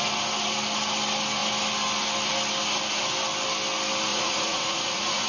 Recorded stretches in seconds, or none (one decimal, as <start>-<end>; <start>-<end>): 0.0-4.1

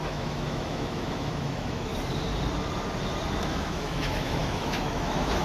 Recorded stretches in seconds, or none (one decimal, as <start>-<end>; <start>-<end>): 1.9-3.3